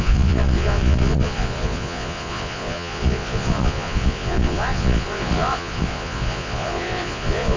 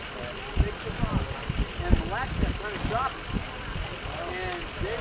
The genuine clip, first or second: second